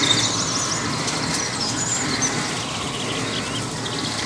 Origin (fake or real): real